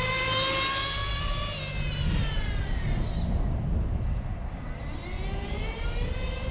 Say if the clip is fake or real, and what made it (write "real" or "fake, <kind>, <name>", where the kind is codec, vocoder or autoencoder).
real